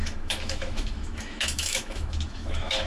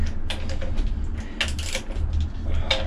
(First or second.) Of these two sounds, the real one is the second